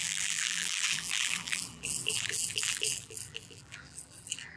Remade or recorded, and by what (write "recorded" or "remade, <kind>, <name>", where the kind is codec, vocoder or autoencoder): remade, vocoder, BigVGAN v2